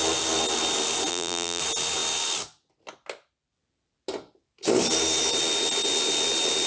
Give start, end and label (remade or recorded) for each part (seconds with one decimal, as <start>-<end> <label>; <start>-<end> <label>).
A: 0.0-1.1 recorded; 1.1-1.6 remade; 1.6-6.7 recorded